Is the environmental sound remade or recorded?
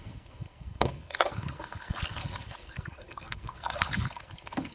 remade